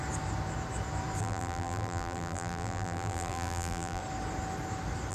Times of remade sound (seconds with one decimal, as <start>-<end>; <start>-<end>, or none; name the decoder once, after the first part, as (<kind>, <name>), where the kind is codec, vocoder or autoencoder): 1.2-4.0 (vocoder, BigVGAN v2)